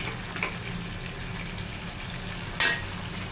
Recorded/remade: recorded